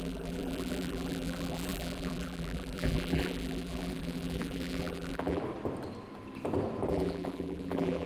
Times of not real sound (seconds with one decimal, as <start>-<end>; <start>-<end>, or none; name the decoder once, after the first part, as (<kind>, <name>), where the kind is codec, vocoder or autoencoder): 0.0-5.4 (vocoder, BigVGAN v2); 6.9-8.1

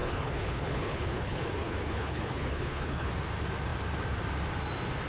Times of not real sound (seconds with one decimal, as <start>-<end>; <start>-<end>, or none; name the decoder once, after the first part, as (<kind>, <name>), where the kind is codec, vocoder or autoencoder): 0.0-3.1 (codec, HILCodec)

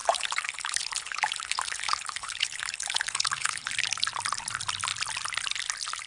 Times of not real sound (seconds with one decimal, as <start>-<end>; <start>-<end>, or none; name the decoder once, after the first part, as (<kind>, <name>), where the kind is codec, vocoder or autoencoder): 0.0-3.7 (codec, HILCodec)

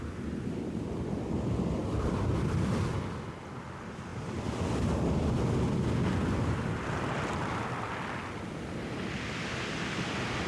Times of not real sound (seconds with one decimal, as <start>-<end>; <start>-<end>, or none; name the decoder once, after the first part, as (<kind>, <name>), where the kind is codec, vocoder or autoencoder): none